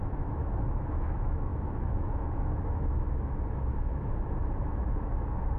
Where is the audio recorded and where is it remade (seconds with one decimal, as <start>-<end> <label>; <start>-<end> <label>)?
0.0-5.6 remade